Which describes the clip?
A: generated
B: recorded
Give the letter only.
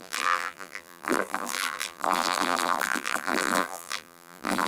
A